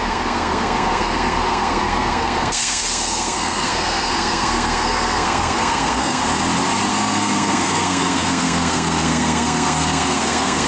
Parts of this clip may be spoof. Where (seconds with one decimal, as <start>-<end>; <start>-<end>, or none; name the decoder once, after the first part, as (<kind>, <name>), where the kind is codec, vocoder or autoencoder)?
0.0-6.2 (codec, SNAC); 6.9-10.7